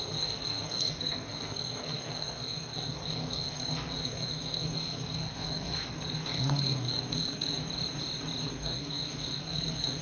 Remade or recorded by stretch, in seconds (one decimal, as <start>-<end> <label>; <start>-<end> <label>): 0.0-7.6 remade; 7.6-8.4 recorded; 8.4-10.0 remade